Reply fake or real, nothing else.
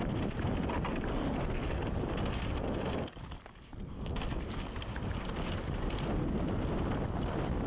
real